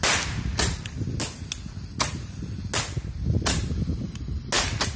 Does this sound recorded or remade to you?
recorded